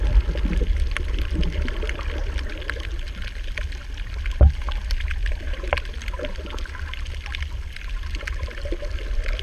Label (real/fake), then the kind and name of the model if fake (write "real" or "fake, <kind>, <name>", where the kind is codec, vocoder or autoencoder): real